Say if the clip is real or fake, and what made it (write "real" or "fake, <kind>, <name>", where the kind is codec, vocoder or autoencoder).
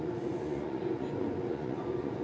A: fake, vocoder, Vocos